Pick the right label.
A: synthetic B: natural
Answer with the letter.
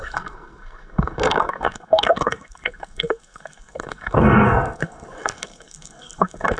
A